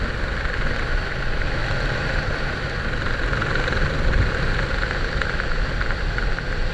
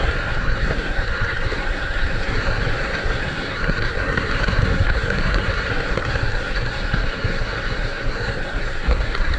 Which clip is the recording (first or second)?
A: first